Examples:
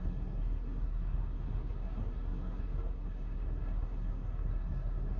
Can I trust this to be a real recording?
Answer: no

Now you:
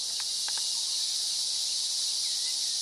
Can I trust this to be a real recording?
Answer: yes